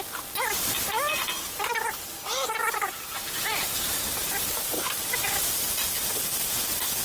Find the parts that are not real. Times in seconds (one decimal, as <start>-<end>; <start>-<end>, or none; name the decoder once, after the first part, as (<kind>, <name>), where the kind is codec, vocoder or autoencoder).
2.6-5.9 (vocoder, BigVGAN v2)